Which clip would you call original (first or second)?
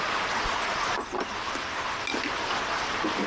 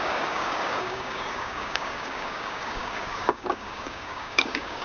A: first